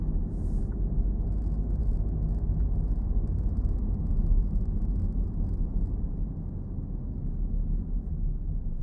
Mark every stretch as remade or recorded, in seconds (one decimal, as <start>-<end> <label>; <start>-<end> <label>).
0.0-8.8 recorded